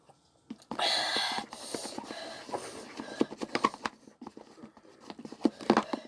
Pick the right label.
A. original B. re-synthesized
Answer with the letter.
A